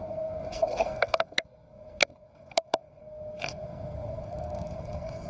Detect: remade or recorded remade